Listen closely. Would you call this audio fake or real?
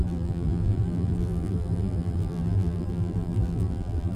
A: fake